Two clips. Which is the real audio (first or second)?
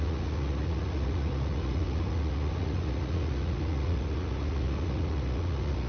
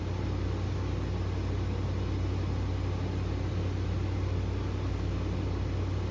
second